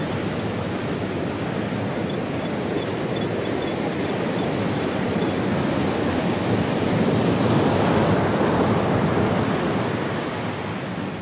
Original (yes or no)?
yes